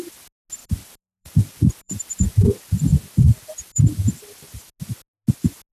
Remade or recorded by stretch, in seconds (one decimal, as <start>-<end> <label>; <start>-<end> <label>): 0.0-0.6 recorded; 0.6-2.5 remade; 2.5-2.9 recorded; 2.9-4.5 remade; 4.5-5.7 recorded